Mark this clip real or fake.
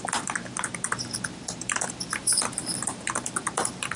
fake